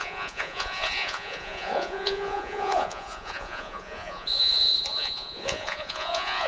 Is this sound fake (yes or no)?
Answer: yes